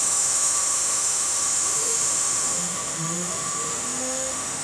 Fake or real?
fake